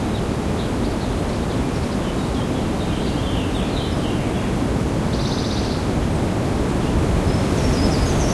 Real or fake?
real